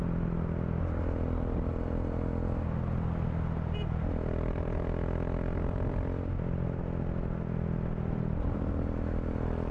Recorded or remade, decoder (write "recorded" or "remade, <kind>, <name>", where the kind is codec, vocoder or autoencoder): recorded